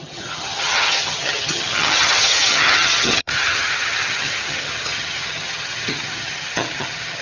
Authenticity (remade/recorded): remade